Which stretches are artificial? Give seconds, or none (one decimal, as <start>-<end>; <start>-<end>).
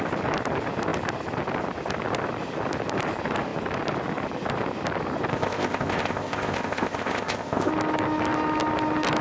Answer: 5.3-7.7